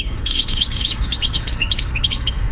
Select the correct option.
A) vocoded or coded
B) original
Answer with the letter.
A